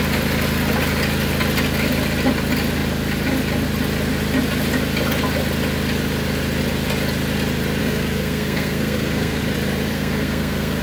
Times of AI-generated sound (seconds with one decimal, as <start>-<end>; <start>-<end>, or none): 7.8-9.4; 9.9-10.8